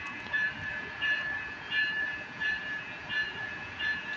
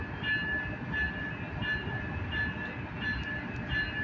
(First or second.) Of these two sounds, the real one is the second